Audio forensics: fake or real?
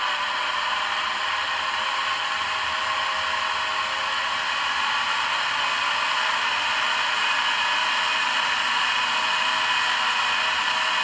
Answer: real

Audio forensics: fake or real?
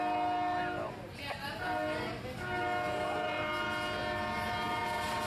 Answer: real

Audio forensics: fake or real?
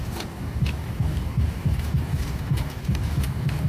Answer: fake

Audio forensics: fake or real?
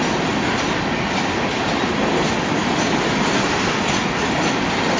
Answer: real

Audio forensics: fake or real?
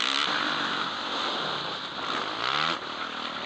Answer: real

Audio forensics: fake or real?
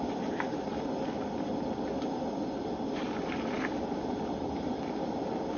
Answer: real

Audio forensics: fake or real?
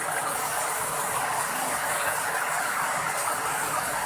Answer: fake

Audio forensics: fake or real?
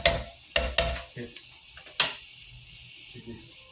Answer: real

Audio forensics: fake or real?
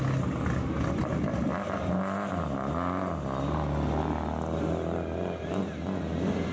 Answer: real